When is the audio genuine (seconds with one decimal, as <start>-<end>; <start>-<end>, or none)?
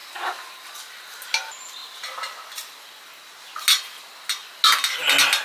0.0-5.4